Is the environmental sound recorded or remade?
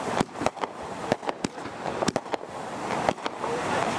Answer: recorded